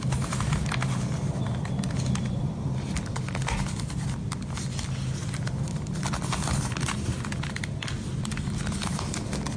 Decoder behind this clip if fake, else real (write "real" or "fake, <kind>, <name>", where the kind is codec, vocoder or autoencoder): real